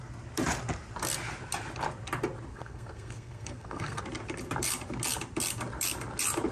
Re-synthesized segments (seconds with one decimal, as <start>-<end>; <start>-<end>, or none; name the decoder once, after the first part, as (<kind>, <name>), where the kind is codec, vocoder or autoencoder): 2.5-4.0 (codec, SNAC)